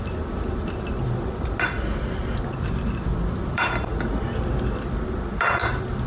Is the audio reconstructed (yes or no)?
yes